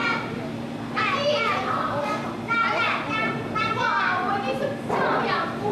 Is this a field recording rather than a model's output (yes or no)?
yes